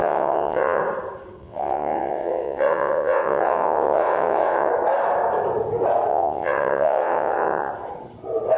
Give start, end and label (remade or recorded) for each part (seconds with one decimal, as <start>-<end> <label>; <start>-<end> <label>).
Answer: 0.0-0.8 remade; 0.8-1.4 recorded; 1.4-4.7 remade; 4.7-6.1 recorded; 6.1-7.7 remade; 7.7-8.6 recorded